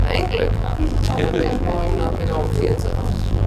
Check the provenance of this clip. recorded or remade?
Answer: remade